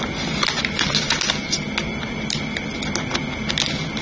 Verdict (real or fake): real